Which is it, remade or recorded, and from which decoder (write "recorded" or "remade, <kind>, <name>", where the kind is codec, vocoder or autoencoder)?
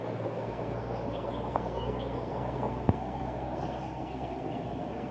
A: remade, codec, SNAC